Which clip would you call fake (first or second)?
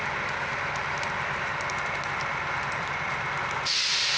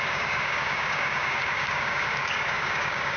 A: second